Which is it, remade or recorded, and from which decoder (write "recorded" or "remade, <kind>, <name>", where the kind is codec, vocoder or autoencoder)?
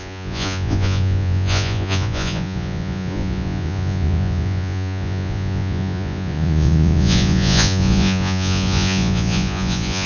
remade, vocoder, Vocos